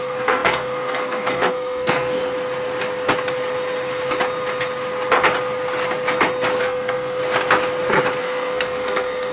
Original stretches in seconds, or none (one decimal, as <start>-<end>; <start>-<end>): 2.2-6.6; 7.2-8.2